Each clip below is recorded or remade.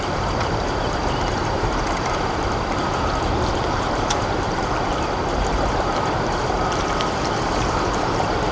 remade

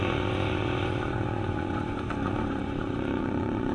remade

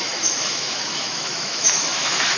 remade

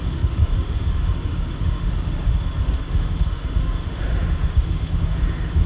remade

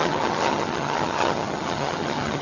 remade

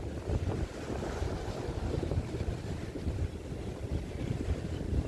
recorded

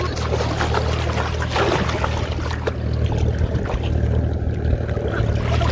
recorded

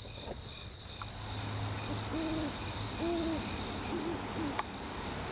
recorded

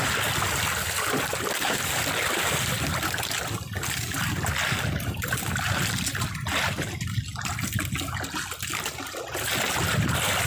recorded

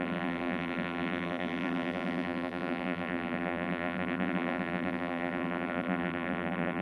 remade